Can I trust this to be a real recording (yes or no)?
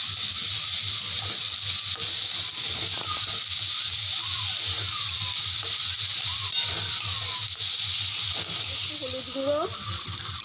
yes